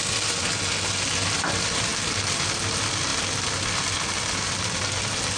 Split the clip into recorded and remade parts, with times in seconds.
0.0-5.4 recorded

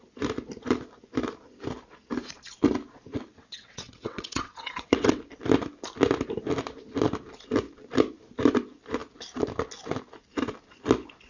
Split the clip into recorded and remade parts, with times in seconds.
0.0-3.1 recorded; 3.1-5.2 remade; 5.2-11.3 recorded

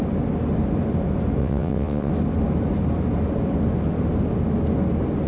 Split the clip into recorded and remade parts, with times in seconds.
0.0-1.4 recorded; 1.4-2.1 remade; 2.1-5.3 recorded

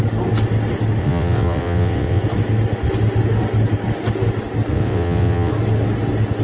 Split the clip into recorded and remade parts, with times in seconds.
0.0-1.0 recorded; 1.0-2.2 remade; 2.2-4.7 recorded; 4.7-5.5 remade; 5.5-6.4 recorded

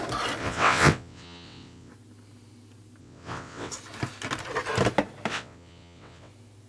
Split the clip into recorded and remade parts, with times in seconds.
0.0-0.4 recorded; 0.4-1.9 remade; 1.9-3.0 recorded; 3.0-3.7 remade; 3.7-5.3 recorded; 5.3-6.3 remade; 6.3-6.7 recorded